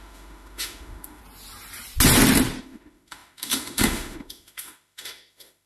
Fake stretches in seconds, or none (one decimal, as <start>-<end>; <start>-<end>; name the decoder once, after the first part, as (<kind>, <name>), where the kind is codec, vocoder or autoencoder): 0.0-1.2 (autoencoder, DAC-VAE); 2.6-5.7